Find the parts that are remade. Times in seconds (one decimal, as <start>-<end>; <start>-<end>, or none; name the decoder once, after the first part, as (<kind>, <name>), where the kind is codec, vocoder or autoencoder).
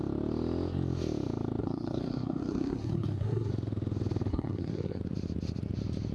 1.6-3.5 (codec, SNAC); 4.3-5.0